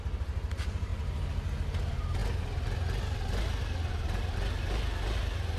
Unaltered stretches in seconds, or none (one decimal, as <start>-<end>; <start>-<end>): 0.0-5.6